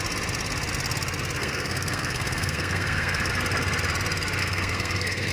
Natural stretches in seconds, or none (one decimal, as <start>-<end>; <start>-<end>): 0.0-1.4; 3.3-4.4